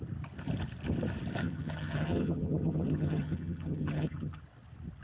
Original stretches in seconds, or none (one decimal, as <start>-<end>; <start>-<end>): 0.0-1.4; 4.4-5.0